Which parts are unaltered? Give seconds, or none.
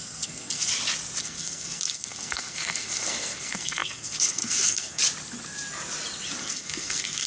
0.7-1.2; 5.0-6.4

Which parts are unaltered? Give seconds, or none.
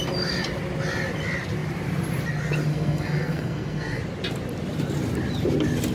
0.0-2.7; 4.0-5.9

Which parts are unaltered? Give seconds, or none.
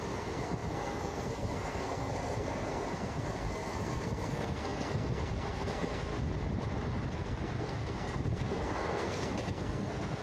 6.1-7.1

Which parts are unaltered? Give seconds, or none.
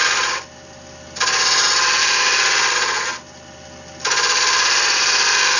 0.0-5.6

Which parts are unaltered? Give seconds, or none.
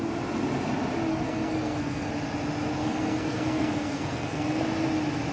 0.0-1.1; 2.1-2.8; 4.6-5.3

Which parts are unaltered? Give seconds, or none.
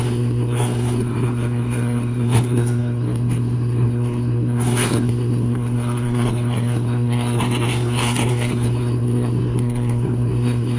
none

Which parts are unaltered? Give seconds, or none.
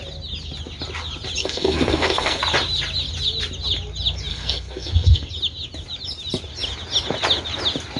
0.0-1.4; 2.4-4.3; 5.3-8.0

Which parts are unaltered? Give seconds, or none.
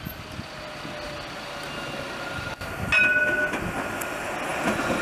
0.0-5.0